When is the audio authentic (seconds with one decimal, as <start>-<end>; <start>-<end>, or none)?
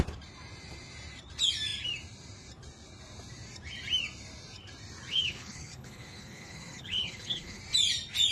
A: 0.0-5.1; 7.6-8.3